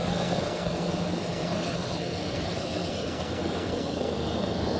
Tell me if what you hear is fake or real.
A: fake